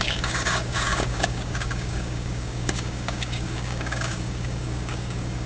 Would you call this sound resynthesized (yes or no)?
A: yes